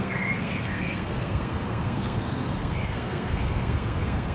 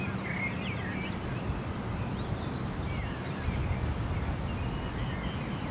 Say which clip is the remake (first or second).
first